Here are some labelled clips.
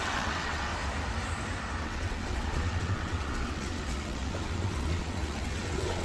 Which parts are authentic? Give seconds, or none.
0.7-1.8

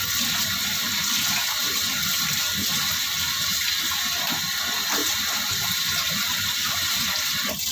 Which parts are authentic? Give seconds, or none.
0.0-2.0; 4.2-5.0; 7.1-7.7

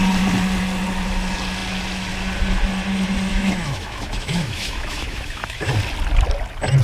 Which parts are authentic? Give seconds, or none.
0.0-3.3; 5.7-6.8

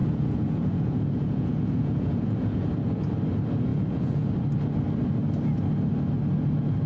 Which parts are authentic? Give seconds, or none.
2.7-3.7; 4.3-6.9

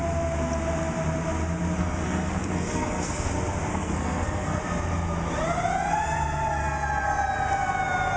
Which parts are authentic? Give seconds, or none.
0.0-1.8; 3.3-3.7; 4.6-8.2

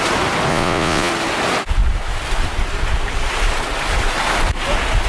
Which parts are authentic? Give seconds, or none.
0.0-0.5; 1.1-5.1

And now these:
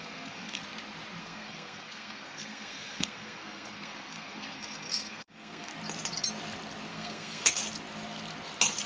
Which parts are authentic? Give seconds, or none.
0.6-1.2; 5.7-6.9; 7.6-8.9

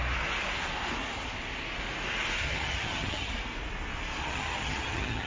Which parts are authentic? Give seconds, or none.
0.0-2.4; 3.3-4.2